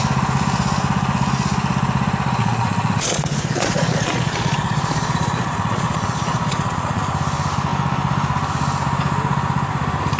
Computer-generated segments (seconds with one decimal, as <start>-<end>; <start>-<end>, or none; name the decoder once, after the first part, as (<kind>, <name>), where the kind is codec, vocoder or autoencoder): 2.4-7.0 (vocoder, Vocos)